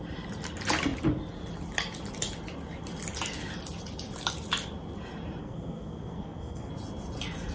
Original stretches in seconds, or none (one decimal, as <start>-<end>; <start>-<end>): 0.0-5.4; 6.7-7.5